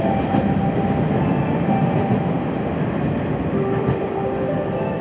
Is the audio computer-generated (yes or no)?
no